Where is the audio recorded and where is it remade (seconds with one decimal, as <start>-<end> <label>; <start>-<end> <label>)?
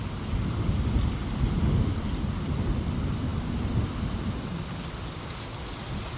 0.0-6.2 recorded